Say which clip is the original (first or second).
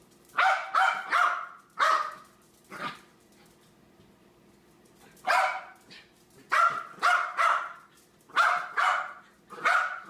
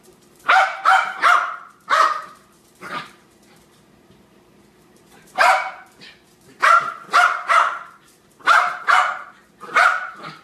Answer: first